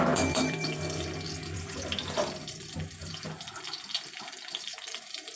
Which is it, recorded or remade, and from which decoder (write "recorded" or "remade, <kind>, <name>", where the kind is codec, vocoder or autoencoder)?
remade, vocoder, BigVGAN v2